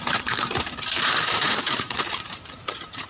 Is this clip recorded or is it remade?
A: remade